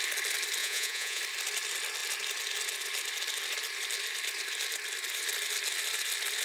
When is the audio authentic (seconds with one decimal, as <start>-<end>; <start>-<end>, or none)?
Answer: 0.0-0.6; 1.2-6.4